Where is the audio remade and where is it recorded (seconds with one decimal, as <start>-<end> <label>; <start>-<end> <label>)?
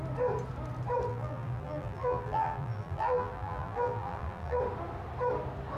0.0-1.1 recorded; 1.1-4.6 remade; 4.6-5.8 recorded